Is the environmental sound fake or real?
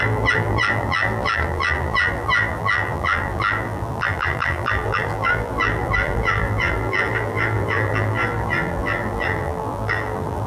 fake